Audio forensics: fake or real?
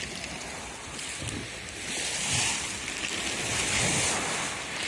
real